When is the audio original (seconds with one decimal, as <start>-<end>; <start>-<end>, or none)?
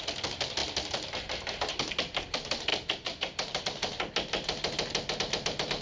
0.0-2.7; 3.6-5.8